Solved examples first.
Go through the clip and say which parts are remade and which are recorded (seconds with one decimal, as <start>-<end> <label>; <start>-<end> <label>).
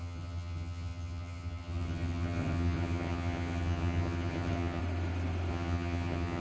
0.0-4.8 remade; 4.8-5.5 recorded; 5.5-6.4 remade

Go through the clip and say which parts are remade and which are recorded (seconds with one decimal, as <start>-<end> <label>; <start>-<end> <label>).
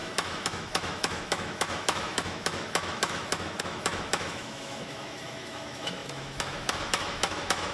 0.0-7.7 remade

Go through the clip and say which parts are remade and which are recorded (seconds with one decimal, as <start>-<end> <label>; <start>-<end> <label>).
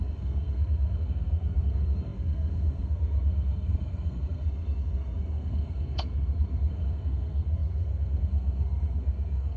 0.0-9.6 remade